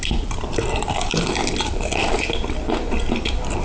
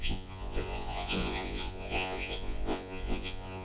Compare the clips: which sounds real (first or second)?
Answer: first